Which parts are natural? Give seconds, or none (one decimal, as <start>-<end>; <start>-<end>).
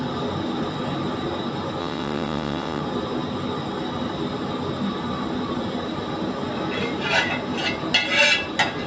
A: 0.0-1.8; 2.8-8.9